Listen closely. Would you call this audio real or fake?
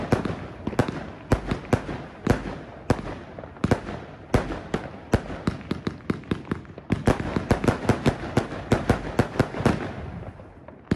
real